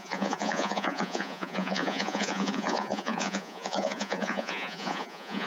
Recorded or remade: remade